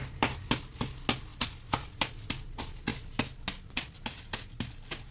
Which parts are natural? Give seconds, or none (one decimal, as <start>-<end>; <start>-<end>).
0.0-5.1

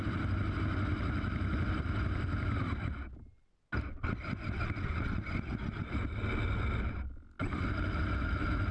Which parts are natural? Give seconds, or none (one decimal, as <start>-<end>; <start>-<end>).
0.0-8.7

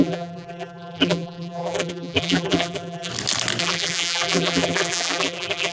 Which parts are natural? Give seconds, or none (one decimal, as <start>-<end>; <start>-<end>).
3.1-3.6

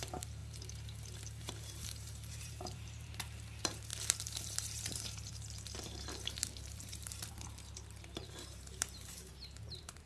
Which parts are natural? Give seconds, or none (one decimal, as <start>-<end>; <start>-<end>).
none

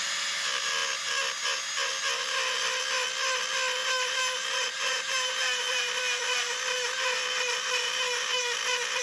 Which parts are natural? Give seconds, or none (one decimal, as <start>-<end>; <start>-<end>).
0.0-3.8

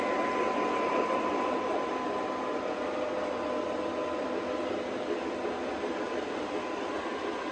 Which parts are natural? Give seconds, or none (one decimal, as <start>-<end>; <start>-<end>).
0.0-0.9; 1.9-7.5

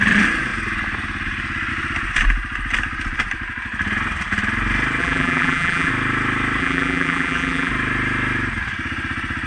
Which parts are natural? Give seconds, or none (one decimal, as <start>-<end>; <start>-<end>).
0.0-5.0; 5.9-6.6; 7.7-9.5

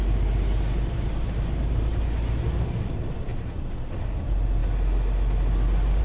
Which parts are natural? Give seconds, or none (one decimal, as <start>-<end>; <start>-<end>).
0.0-3.3; 3.9-6.0